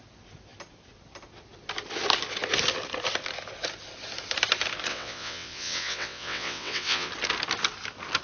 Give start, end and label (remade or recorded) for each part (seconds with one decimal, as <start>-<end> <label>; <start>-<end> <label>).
0.0-4.9 recorded; 4.9-7.1 remade; 7.1-8.2 recorded

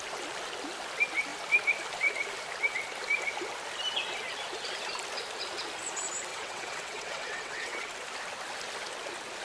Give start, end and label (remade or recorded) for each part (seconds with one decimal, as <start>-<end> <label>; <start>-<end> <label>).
0.0-6.3 recorded; 6.3-7.9 remade; 7.9-9.4 recorded

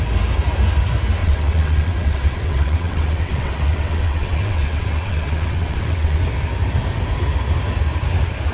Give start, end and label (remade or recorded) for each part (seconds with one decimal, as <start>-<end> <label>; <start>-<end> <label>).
0.0-1.2 recorded; 1.2-6.2 remade; 6.2-8.5 recorded